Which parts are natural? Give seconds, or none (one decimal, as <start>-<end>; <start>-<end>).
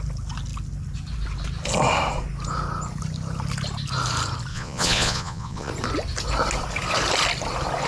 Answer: 0.0-4.5; 5.7-7.9